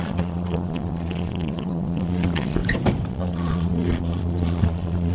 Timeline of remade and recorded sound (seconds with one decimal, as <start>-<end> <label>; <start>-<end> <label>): 0.0-2.6 remade; 2.6-3.1 recorded; 3.1-5.1 remade